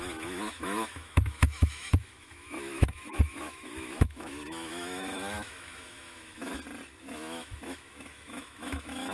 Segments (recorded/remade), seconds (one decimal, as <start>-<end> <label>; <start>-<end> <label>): 0.0-6.5 remade; 6.5-7.0 recorded; 7.0-9.1 remade